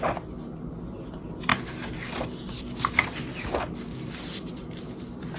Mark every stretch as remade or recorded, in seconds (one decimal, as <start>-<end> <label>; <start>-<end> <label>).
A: 0.0-5.4 recorded